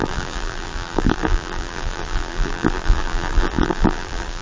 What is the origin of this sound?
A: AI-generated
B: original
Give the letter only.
A